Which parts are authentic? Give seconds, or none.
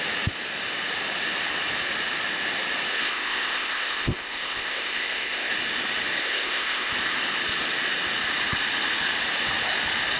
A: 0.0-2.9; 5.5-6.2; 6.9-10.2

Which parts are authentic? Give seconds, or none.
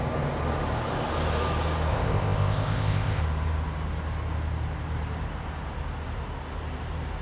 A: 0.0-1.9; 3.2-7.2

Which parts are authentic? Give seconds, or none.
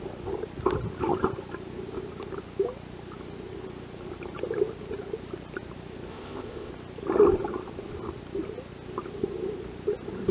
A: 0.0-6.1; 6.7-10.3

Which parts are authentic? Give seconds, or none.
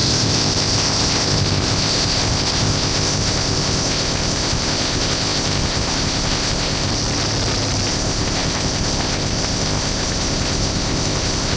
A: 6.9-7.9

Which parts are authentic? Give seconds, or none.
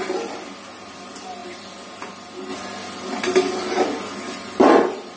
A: 0.0-5.2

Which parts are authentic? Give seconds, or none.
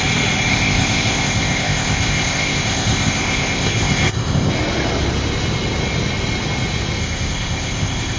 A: 0.0-0.5; 4.5-7.0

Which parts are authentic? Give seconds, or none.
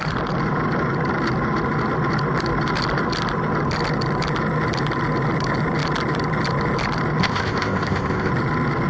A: 0.0-7.2; 8.3-8.9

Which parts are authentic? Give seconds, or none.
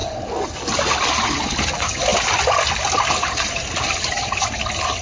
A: 0.0-5.0